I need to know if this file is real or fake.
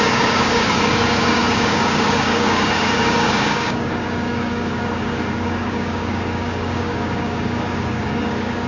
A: fake